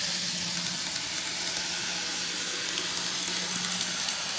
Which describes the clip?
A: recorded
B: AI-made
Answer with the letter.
A